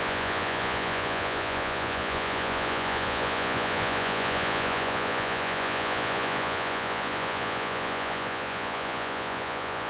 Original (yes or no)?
no